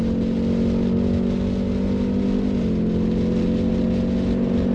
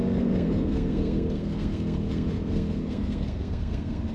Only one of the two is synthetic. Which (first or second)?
second